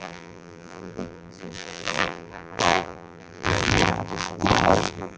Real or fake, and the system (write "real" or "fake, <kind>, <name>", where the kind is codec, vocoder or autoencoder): fake, vocoder, BigVGAN v2